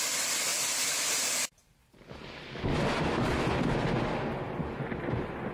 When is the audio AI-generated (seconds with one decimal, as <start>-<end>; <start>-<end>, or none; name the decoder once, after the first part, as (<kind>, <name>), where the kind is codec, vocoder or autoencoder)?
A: 0.0-0.5 (vocoder, BigVGAN v2); 1.1-1.8; 5.1-5.5